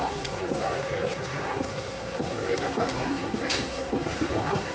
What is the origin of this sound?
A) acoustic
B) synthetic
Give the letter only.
B